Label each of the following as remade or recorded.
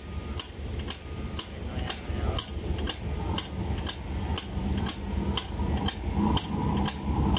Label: recorded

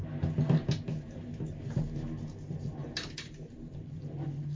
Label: recorded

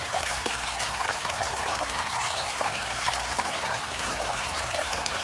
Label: remade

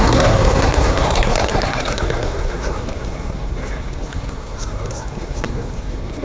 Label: remade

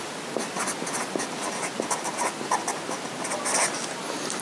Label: recorded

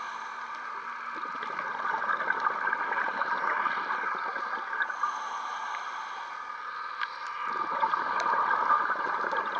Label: recorded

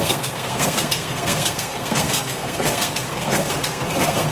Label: remade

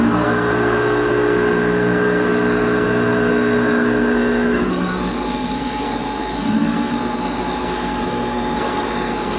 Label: remade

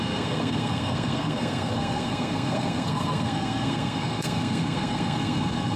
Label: remade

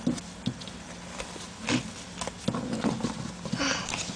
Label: recorded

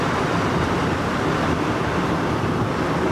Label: recorded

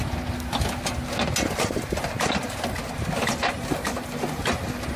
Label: recorded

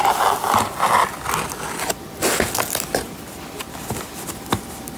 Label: recorded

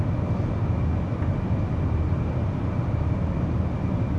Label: recorded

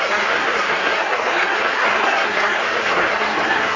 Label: remade